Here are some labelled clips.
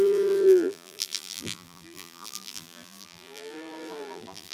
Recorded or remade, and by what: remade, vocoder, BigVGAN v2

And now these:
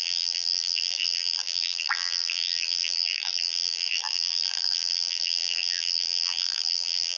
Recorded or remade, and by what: remade, vocoder, BigVGAN v2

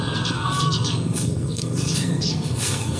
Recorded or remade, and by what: remade, codec, SNAC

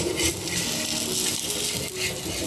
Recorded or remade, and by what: recorded